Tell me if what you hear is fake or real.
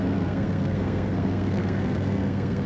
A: fake